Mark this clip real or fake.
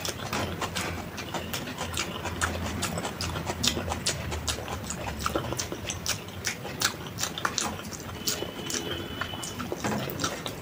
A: real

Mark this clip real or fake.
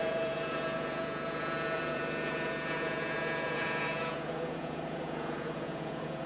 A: fake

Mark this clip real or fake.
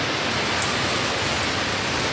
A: real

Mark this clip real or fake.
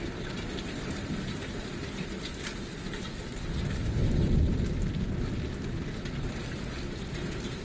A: real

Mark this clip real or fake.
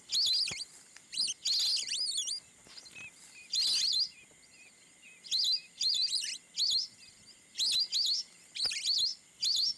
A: real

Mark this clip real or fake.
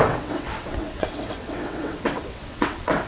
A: fake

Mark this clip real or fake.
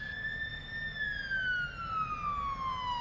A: real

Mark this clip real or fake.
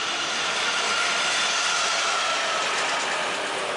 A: real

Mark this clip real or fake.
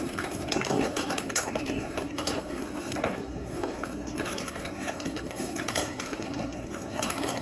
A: fake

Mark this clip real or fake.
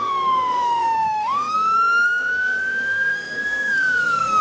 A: fake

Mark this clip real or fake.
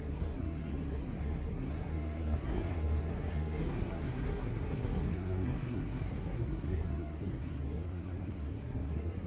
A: fake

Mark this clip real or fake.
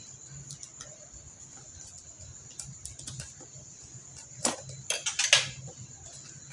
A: real